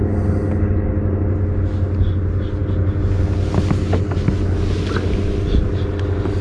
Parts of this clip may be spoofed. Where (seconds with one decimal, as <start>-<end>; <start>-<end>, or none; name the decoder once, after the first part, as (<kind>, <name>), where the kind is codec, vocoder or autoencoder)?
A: none